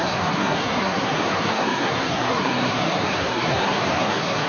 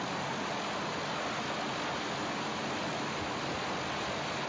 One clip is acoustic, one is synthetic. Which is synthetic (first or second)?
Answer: first